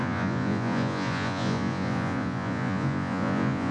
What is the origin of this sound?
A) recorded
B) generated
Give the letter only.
B